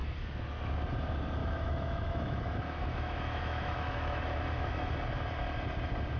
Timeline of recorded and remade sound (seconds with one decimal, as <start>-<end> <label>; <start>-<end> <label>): 0.0-1.4 recorded; 1.4-4.9 remade; 4.9-6.2 recorded